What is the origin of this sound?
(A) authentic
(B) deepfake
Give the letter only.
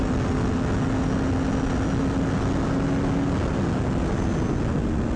A